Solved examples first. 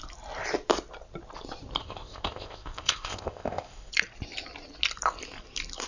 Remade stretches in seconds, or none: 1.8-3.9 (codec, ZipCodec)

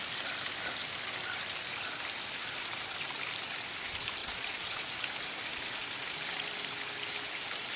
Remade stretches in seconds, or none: 4.2-4.8 (vocoder, Vocos)